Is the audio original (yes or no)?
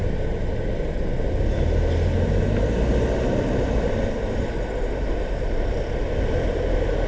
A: yes